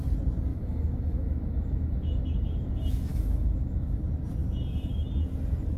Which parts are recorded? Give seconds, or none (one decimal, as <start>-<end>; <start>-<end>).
0.0-0.5; 2.7-3.1; 4.0-4.4; 5.1-5.8

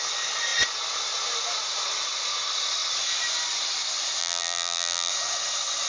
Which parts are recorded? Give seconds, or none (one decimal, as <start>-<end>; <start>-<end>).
0.0-4.2; 5.1-5.9

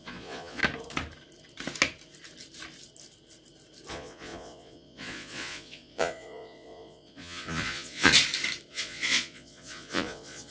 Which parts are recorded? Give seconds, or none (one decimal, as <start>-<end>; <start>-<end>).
0.6-3.9; 8.1-8.7

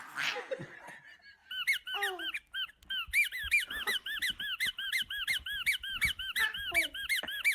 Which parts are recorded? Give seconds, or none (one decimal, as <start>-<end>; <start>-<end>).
0.0-7.5

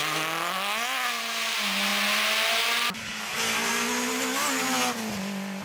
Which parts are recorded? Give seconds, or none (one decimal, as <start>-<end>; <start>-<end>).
0.0-5.6

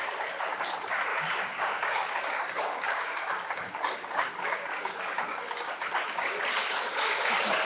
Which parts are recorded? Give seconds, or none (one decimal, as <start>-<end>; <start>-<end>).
0.0-1.1; 5.7-6.5

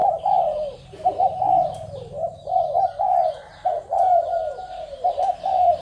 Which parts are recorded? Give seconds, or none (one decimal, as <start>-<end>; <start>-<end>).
none